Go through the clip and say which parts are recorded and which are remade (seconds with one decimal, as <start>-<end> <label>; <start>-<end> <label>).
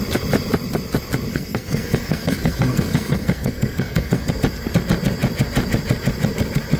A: 0.0-1.3 recorded; 1.3-4.3 remade; 4.3-6.8 recorded